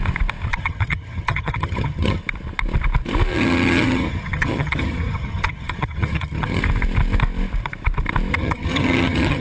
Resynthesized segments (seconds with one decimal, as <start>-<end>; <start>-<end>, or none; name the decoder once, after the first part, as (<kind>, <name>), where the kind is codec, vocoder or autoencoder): 0.5-2.2 (vocoder, HiFi-GAN); 3.3-6.6; 8.3-9.4